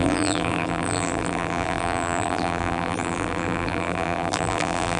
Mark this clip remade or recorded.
remade